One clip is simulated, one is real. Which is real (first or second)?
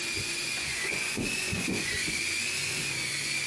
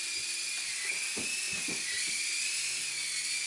second